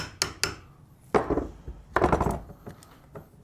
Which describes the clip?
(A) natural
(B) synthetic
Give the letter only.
A